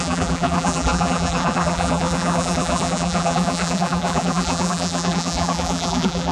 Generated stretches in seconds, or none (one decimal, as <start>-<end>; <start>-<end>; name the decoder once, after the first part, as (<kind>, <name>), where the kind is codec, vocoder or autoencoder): 0.0-6.3 (vocoder, BigVGAN v2)